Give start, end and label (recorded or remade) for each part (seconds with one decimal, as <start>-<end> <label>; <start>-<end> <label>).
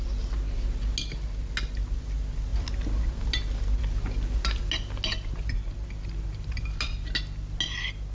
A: 0.0-8.1 recorded